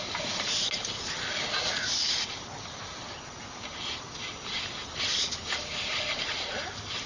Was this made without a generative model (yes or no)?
yes